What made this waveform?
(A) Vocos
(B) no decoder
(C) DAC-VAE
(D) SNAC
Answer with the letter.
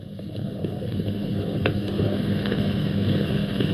D